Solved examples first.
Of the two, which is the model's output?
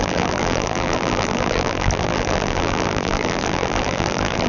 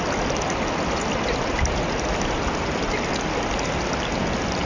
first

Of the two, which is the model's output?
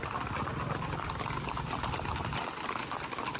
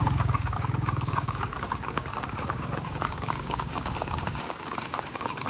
second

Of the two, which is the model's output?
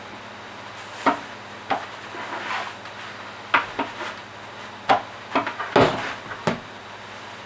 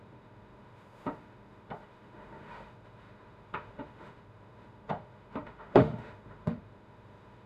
second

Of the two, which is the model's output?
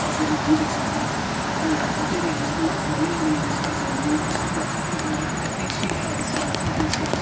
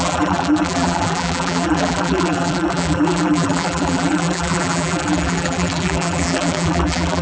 second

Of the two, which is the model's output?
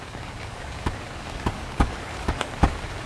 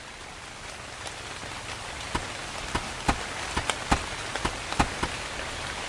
first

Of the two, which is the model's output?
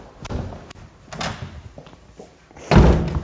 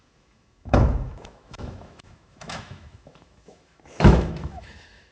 second